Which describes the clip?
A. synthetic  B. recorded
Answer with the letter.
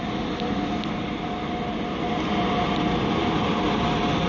B